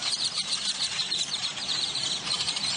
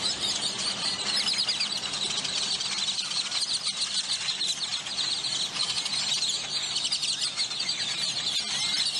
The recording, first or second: second